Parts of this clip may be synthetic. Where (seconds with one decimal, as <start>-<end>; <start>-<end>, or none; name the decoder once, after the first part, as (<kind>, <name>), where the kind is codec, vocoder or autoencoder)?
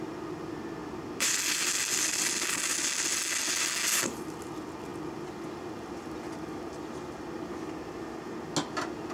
none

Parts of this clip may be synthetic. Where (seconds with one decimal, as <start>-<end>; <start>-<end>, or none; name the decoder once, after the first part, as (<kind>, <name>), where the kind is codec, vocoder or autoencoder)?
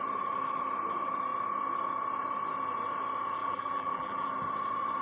3.4-4.3 (vocoder, BigVGAN v2)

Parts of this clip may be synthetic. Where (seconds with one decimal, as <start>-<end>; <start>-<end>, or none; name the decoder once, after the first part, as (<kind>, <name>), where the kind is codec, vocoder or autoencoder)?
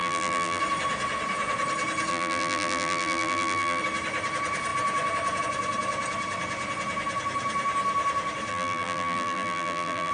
0.0-0.6 (vocoder, BigVGAN v2); 2.1-3.8; 8.5-10.1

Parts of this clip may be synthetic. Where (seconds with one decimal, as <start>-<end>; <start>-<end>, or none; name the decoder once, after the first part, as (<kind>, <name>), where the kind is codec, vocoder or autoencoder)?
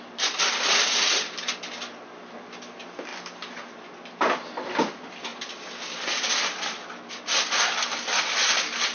3.1-3.7 (vocoder, BigVGAN v2); 5.3-8.2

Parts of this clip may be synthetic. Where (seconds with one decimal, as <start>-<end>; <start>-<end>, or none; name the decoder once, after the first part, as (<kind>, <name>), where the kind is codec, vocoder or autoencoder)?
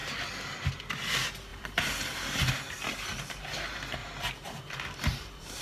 1.5-2.5 (vocoder, BigVGAN v2); 4.0-5.6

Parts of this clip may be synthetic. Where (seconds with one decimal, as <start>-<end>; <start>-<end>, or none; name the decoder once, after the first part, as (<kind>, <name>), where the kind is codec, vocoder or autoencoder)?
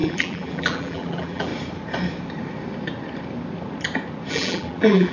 0.0-1.5 (vocoder, BigVGAN v2); 4.3-5.1